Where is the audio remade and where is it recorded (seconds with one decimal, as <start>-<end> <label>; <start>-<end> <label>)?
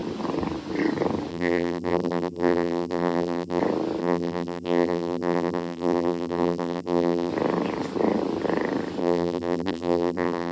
0.0-1.3 recorded; 1.3-3.6 remade; 3.6-4.0 recorded; 4.0-7.3 remade; 7.3-9.0 recorded; 9.0-10.5 remade